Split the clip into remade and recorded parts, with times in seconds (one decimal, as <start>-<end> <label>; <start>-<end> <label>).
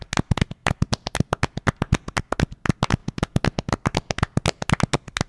0.0-5.3 recorded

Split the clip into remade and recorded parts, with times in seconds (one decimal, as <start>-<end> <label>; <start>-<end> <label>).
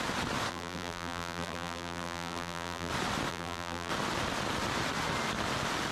0.0-0.5 recorded; 0.5-2.9 remade; 2.9-3.3 recorded; 3.3-3.9 remade; 3.9-5.9 recorded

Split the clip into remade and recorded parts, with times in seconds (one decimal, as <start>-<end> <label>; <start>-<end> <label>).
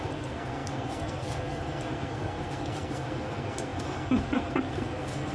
0.0-5.3 remade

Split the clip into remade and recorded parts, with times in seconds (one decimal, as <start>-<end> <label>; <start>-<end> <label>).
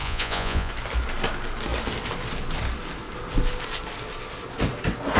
0.0-0.7 remade; 0.7-5.2 recorded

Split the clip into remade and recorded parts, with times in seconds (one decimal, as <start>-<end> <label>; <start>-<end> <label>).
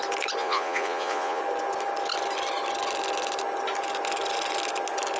0.0-0.4 recorded; 0.4-1.4 remade; 1.4-5.2 recorded